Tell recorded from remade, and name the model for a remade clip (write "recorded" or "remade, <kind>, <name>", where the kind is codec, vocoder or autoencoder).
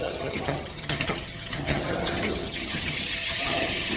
remade, vocoder, HiFi-GAN